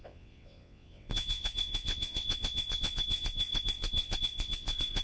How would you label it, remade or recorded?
remade